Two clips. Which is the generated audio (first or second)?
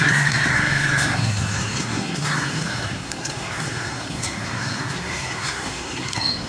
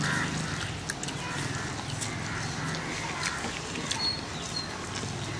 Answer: first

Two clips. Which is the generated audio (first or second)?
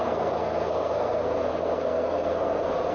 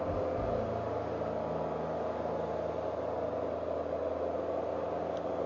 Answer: first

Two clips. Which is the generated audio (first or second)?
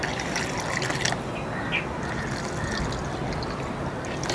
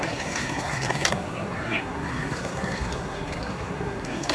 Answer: second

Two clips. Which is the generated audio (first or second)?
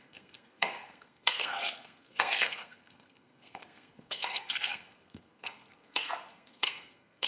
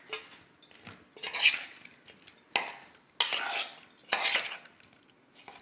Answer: first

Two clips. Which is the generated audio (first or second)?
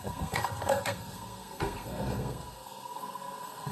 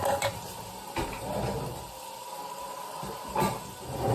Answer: first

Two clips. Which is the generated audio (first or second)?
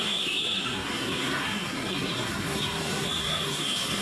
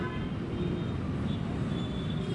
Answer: first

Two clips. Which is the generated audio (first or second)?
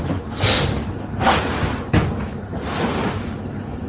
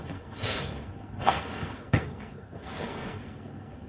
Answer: second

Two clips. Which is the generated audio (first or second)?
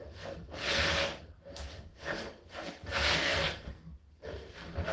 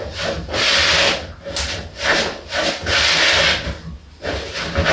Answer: first